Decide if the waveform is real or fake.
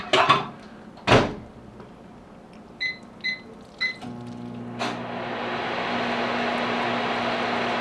real